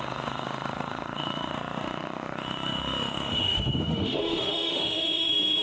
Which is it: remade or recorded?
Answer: remade